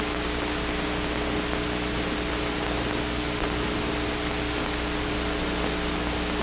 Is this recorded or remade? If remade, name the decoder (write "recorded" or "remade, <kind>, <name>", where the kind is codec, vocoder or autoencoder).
recorded